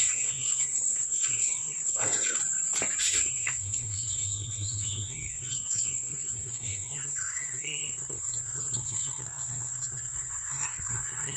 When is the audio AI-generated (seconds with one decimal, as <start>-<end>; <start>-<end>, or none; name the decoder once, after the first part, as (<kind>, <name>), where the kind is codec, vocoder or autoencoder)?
0.0-2.4 (codec, SNAC); 3.0-11.4